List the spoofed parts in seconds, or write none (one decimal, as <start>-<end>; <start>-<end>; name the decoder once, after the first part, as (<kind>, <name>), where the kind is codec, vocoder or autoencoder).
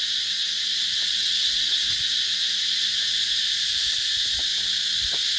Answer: 0.7-2.0 (vocoder, WaveNeXt)